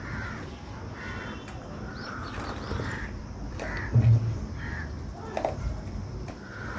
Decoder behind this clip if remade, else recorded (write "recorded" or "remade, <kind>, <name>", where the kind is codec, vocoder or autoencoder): remade, vocoder, BigVGAN v2